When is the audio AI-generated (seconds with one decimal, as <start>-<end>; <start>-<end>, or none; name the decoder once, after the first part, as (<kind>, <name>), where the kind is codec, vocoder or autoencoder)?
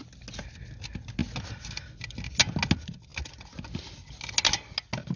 none